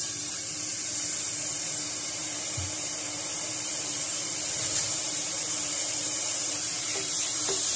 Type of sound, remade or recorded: remade